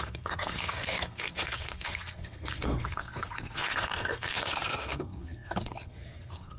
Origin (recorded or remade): remade